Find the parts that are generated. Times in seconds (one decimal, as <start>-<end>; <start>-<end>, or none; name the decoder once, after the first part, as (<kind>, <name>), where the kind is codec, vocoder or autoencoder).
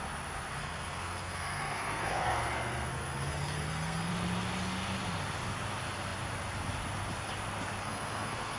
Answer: 0.6-4.1 (codec, SNAC); 7.8-8.6